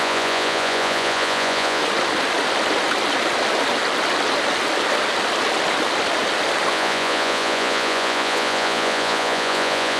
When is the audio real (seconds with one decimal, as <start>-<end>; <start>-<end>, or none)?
1.8-6.7